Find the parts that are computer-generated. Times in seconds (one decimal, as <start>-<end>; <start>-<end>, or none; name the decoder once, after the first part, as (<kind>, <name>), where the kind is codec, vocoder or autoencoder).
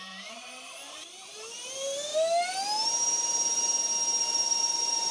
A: 0.0-2.1 (vocoder, BigVGAN v2); 4.2-5.1